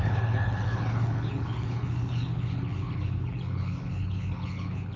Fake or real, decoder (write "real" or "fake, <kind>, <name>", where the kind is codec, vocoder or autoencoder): fake, codec, HILCodec